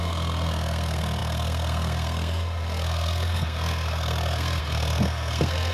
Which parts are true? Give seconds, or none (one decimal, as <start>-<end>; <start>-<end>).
none